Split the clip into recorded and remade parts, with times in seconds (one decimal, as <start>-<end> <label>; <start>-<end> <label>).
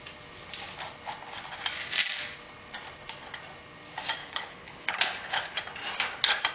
0.0-4.2 recorded; 4.2-5.6 remade; 5.6-6.5 recorded